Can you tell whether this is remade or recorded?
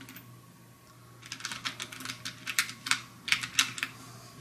recorded